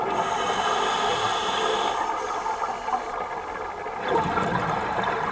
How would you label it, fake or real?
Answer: real